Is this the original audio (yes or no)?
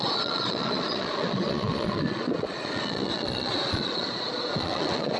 no